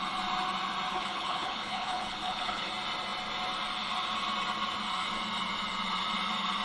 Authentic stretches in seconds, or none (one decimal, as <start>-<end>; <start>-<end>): 0.0-0.9; 2.7-6.6